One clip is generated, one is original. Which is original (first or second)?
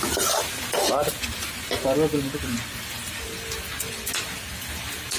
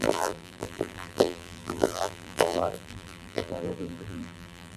first